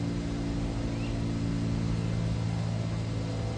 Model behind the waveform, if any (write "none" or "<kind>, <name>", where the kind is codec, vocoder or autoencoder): none